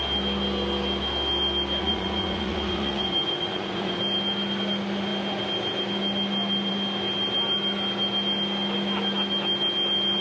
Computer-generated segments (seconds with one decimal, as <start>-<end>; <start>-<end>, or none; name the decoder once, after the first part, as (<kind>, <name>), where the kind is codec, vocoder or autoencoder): 1.8-4.0 (vocoder, Vocos)

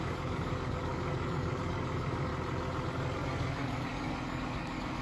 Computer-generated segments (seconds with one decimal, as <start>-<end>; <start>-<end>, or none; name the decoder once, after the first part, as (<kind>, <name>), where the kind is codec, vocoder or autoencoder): 0.0-2.3 (codec, DAC); 2.9-5.0

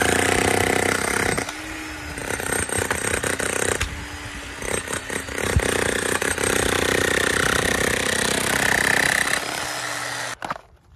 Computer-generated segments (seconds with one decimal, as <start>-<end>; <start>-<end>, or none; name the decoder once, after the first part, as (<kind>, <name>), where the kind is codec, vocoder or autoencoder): none

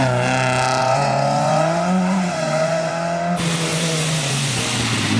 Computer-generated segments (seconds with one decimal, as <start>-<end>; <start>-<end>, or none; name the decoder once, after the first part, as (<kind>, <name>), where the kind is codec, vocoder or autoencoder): 0.8-2.9 (vocoder, Vocos); 3.7-4.6